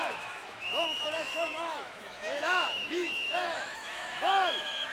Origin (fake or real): fake